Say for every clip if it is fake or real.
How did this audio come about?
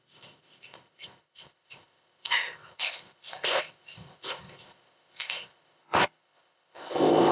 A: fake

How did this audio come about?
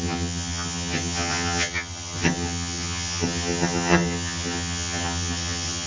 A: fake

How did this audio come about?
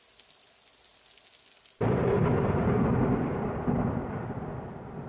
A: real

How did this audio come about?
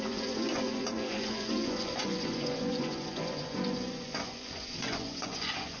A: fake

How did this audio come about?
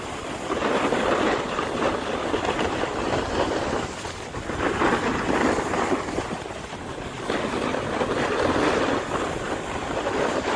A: real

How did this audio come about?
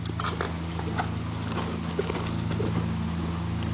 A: real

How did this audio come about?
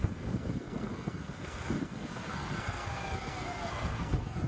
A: fake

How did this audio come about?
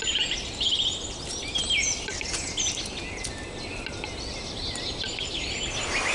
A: real